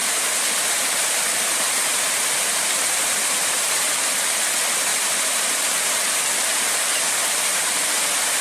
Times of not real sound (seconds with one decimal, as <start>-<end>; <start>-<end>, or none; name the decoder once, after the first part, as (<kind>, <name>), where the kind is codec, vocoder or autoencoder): 0.0-3.8 (vocoder, BigVGAN v2); 4.9-6.0; 6.5-8.4